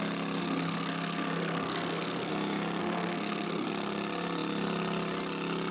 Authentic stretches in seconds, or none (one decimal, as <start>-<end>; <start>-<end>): 0.0-0.4; 2.3-2.8; 3.7-5.7

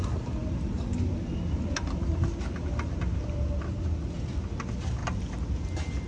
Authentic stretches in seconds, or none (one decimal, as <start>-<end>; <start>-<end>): 0.0-6.1

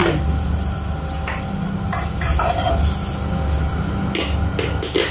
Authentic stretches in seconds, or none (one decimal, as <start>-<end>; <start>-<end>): 0.0-5.1

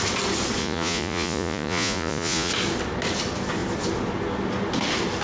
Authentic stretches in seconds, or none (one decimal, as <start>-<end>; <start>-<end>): 0.0-0.6; 2.5-5.2

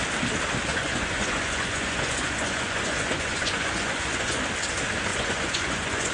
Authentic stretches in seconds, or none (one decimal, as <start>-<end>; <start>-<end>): 0.0-0.7; 4.4-5.1